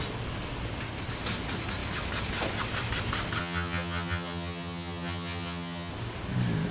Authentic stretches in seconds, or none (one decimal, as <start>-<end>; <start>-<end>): 0.0-3.4; 5.9-6.7